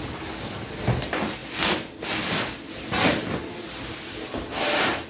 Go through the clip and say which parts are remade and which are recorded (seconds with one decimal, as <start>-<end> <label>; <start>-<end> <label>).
0.0-5.1 recorded